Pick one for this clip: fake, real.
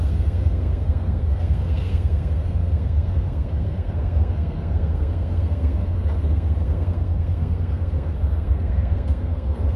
fake